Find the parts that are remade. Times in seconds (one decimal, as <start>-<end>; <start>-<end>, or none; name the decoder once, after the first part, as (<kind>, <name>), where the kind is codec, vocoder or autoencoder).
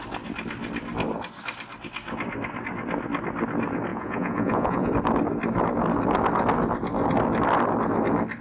3.9-4.9 (vocoder, Vocos)